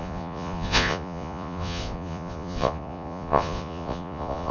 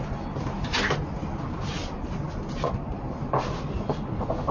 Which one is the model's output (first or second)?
first